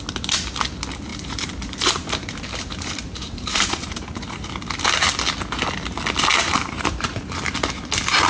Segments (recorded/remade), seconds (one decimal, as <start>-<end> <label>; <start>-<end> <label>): 0.0-1.1 recorded; 1.1-4.5 remade; 4.5-6.3 recorded; 6.3-7.5 remade; 7.5-8.3 recorded